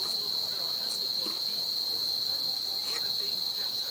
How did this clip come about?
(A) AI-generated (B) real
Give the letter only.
B